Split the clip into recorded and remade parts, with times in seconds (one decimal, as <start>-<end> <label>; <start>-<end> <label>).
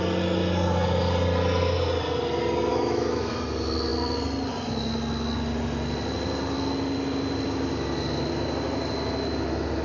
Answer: 0.0-2.7 recorded; 2.7-3.4 remade; 3.4-9.8 recorded